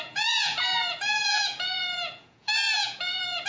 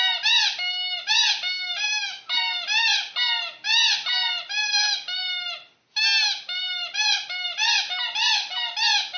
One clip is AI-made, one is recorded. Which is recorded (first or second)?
second